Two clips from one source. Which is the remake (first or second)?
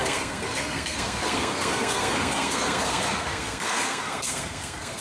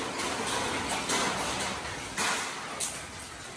first